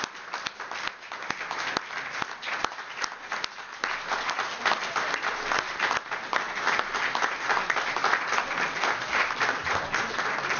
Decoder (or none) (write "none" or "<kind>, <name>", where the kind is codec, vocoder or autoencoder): none